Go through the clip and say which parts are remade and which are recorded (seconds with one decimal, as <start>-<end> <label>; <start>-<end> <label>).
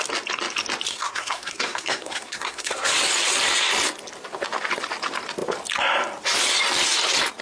0.0-0.9 recorded; 0.9-2.9 remade; 2.9-7.4 recorded